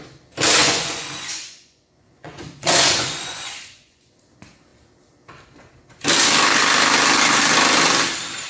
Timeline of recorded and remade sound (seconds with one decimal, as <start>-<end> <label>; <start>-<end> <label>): 0.0-0.6 recorded; 0.6-4.1 remade; 4.1-8.5 recorded

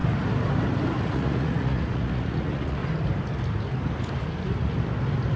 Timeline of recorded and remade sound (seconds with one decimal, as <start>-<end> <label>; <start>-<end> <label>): 0.0-1.0 recorded; 1.0-2.8 remade; 2.8-5.4 recorded

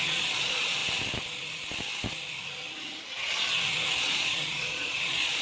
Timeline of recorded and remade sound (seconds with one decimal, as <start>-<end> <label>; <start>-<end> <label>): 0.0-0.8 remade; 0.8-4.0 recorded; 4.0-5.4 remade